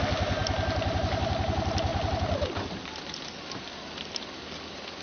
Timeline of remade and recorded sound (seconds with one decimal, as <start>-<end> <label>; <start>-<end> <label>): 0.0-5.0 recorded